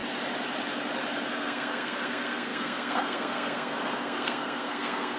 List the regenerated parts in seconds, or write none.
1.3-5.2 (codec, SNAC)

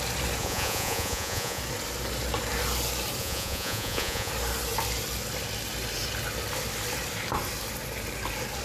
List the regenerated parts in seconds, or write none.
0.4-1.6 (vocoder, Vocos); 3.2-4.3

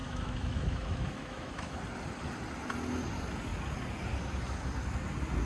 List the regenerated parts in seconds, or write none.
0.0-1.8 (autoencoder, DAC-VAE)

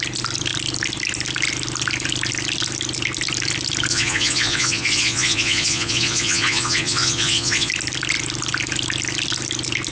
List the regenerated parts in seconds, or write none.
3.9-7.7 (vocoder, Vocos)

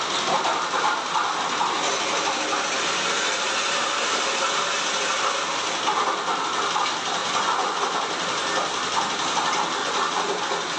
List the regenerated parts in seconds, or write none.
7.2-7.8 (vocoder, Vocos); 9.8-10.4

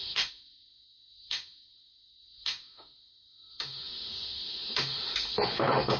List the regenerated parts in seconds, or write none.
0.0-6.0 (autoencoder, DAC-VAE)